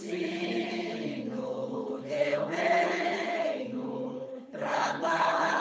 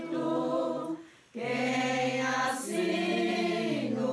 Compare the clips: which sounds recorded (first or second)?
second